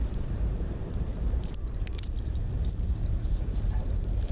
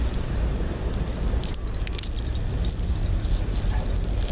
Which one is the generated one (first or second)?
first